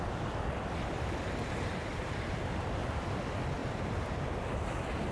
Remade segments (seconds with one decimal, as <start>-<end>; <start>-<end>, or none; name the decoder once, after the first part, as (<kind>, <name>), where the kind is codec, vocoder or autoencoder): 1.9-2.7 (vocoder, BigVGAN v2); 3.6-4.5